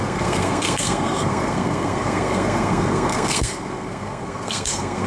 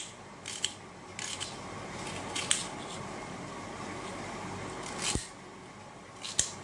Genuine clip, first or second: second